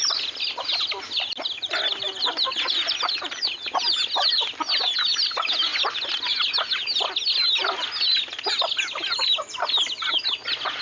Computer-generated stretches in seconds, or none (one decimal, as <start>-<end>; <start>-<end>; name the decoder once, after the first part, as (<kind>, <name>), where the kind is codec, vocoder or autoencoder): none